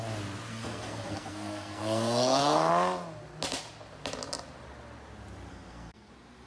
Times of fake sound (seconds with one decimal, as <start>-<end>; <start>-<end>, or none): 0.5-2.7; 5.5-6.1